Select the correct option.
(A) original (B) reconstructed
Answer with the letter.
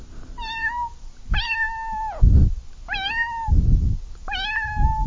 A